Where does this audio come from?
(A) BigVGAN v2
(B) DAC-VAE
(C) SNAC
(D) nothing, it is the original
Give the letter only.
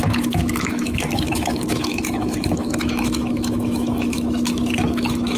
B